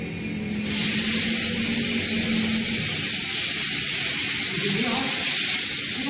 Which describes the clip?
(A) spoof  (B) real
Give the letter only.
B